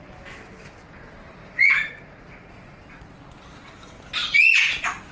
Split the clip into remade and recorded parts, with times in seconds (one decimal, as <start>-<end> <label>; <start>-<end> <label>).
0.0-1.4 recorded; 1.4-2.8 remade; 2.8-5.1 recorded